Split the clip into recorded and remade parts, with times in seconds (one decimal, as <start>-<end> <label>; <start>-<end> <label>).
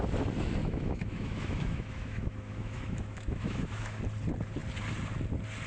0.0-0.6 recorded; 0.6-4.0 remade; 4.0-5.7 recorded